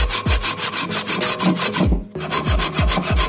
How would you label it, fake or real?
real